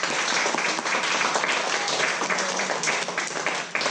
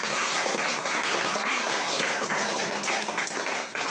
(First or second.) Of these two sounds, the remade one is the second